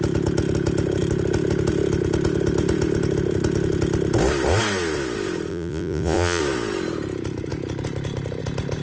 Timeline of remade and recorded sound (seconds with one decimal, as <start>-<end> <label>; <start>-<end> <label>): 0.0-5.5 recorded; 5.5-6.4 remade; 6.4-8.8 recorded